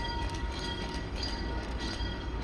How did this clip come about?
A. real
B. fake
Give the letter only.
B